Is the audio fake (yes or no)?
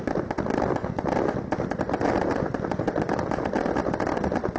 no